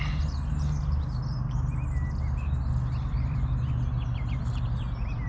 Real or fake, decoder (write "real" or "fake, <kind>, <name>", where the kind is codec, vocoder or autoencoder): real